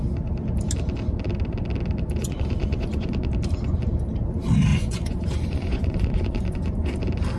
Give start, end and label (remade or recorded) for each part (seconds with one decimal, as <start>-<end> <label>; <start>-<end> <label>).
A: 0.0-2.2 recorded; 2.2-3.3 remade; 3.3-4.7 recorded; 4.7-7.0 remade; 7.0-7.4 recorded